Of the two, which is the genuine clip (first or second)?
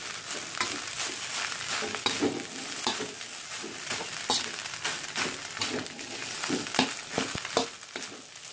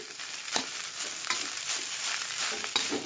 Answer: first